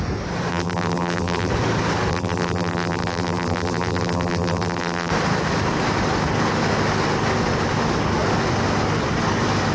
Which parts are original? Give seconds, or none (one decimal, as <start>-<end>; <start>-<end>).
0.0-0.5; 1.5-2.1; 5.1-9.7